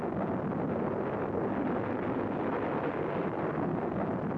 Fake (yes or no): no